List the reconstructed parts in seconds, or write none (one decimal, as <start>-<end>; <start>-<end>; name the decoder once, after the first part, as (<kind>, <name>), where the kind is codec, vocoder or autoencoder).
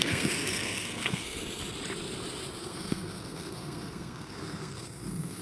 0.0-1.4 (codec, SNAC); 2.6-5.4